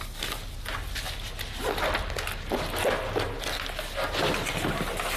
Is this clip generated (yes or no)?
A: no